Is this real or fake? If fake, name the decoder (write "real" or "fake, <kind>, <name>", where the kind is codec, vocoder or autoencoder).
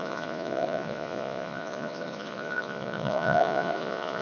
fake, vocoder, Vocos